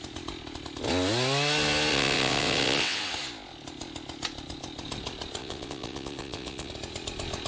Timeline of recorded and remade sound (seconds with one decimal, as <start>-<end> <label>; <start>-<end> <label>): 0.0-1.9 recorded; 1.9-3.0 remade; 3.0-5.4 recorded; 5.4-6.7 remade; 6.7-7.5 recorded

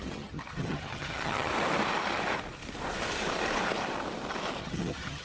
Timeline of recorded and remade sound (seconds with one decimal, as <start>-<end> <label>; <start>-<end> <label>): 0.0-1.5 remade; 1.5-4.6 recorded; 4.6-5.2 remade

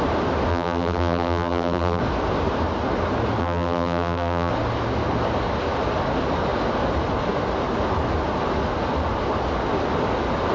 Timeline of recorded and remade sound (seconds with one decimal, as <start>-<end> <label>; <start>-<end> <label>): 0.0-0.5 recorded; 0.5-2.0 remade; 2.0-3.4 recorded; 3.4-4.5 remade; 4.5-10.5 recorded

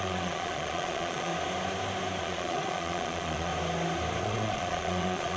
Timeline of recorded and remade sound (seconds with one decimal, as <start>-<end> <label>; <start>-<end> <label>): 0.0-1.3 remade; 1.3-2.2 recorded; 2.2-3.5 remade; 3.5-4.2 recorded; 4.2-5.4 remade

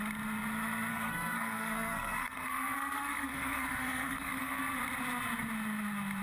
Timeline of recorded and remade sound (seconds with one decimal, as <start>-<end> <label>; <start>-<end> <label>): 0.0-0.9 recorded; 0.9-4.6 remade; 4.6-6.2 recorded

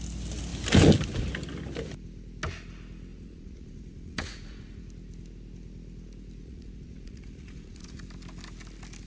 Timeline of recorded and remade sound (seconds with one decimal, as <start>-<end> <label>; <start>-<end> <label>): 0.0-3.1 recorded; 3.1-4.8 remade; 4.8-6.4 recorded; 6.4-8.0 remade; 8.0-9.1 recorded

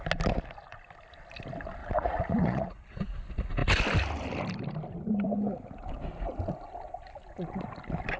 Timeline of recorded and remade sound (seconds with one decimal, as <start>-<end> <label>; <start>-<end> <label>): 0.0-1.8 recorded; 1.8-2.8 remade; 2.8-8.2 recorded